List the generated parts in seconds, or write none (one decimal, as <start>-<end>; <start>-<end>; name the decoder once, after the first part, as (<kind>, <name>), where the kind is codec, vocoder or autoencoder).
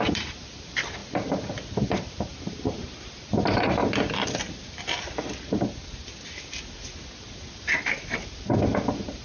0.0-1.0 (vocoder, BigVGAN v2); 1.9-3.8; 7.5-9.2